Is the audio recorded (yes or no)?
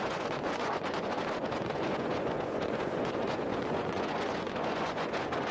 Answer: no